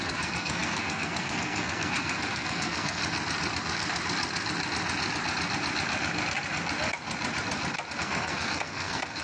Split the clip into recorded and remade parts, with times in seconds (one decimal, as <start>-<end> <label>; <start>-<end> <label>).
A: 0.0-3.0 remade; 3.0-8.0 recorded; 8.0-9.2 remade